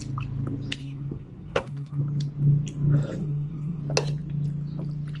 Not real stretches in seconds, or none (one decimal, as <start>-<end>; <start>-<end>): 0.8-2.0; 3.2-3.8